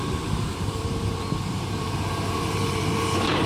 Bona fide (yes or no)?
no